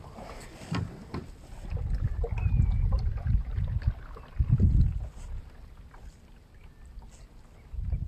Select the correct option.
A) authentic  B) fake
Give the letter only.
A